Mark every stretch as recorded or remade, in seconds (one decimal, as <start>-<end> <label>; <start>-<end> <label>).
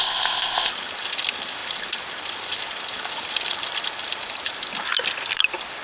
0.0-0.7 remade; 0.7-5.8 recorded